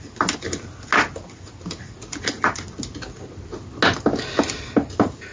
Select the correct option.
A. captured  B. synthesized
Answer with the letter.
A